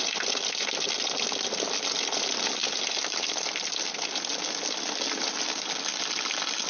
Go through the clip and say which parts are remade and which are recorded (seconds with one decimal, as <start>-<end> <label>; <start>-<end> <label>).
0.0-6.7 recorded